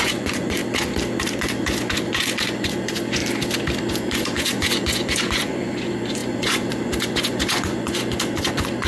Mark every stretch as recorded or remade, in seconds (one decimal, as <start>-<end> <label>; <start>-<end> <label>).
0.0-0.6 remade; 0.6-1.4 recorded; 1.4-3.2 remade; 3.2-3.9 recorded; 3.9-8.9 remade